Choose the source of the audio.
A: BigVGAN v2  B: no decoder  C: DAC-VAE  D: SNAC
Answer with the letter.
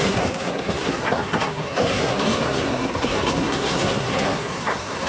D